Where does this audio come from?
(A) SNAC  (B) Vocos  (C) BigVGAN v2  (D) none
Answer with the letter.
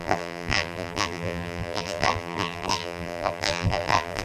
C